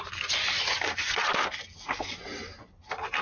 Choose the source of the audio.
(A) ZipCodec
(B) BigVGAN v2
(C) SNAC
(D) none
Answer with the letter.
D